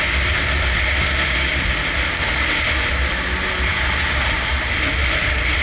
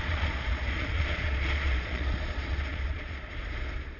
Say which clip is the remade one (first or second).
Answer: second